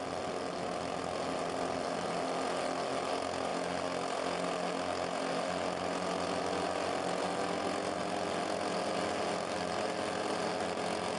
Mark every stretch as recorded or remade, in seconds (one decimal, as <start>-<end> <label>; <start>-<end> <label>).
0.0-11.2 recorded